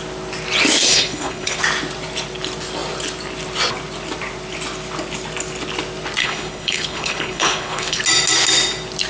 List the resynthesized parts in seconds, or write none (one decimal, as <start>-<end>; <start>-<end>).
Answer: 0.9-1.6; 6.2-8.0